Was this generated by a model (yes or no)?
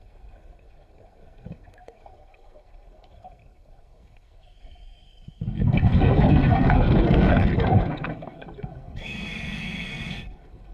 yes